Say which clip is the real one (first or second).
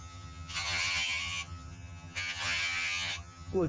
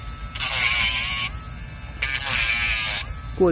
second